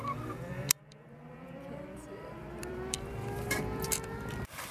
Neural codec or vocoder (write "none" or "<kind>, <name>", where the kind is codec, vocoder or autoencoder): vocoder, BigVGAN v2